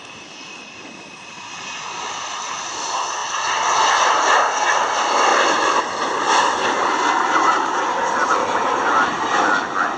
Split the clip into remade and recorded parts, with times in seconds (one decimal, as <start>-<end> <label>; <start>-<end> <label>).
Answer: 0.0-5.3 recorded; 5.3-5.8 remade; 5.8-10.0 recorded

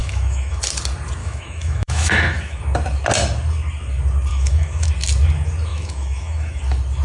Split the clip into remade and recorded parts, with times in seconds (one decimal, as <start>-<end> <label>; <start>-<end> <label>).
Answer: 0.0-0.6 remade; 0.6-1.2 recorded; 1.2-2.6 remade; 2.6-4.3 recorded; 4.3-4.9 remade; 4.9-5.7 recorded; 5.7-6.6 remade; 6.6-7.0 recorded

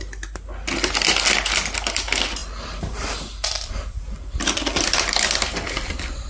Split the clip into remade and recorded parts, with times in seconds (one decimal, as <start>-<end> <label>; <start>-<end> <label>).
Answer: 0.0-2.4 recorded; 2.4-6.3 remade

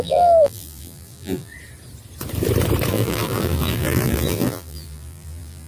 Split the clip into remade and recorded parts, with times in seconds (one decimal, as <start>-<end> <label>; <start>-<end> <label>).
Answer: 0.0-1.5 remade; 1.5-2.9 recorded; 2.9-5.7 remade

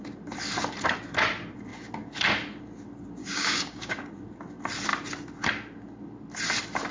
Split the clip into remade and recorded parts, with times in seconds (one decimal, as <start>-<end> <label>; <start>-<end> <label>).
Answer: 0.0-3.2 recorded; 3.2-4.1 remade; 4.1-6.9 recorded